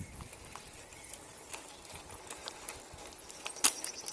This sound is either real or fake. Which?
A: real